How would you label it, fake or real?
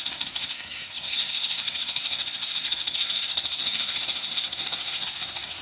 fake